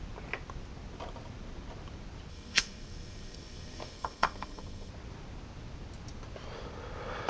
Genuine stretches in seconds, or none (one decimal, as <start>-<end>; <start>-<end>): 0.0-2.3; 4.9-7.3